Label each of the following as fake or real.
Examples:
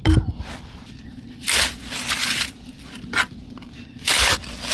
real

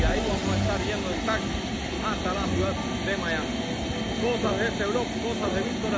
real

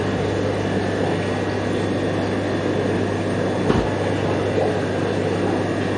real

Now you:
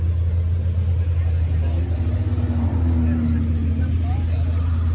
real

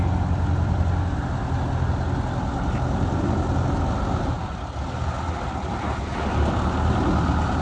real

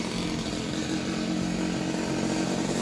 real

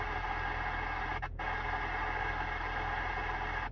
real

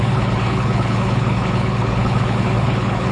fake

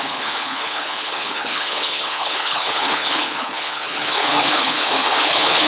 fake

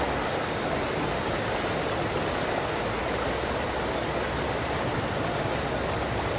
real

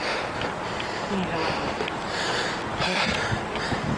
real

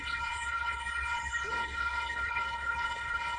fake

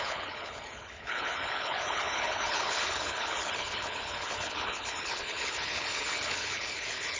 fake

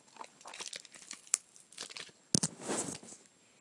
real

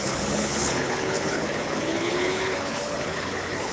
fake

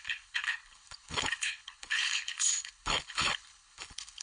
fake